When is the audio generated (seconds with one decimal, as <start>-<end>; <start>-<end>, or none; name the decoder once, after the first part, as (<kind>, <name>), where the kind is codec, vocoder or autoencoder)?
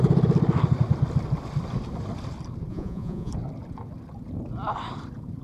2.7-3.3 (vocoder, Vocos)